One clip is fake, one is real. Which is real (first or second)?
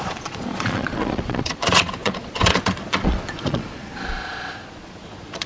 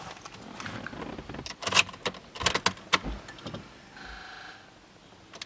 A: second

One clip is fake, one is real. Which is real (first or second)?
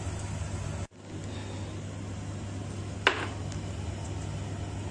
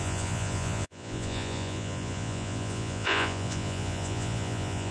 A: first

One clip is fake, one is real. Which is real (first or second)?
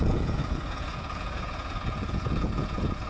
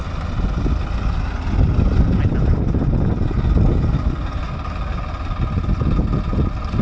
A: second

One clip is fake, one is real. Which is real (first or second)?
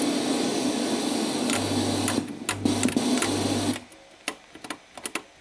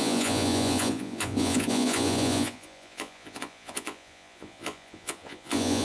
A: first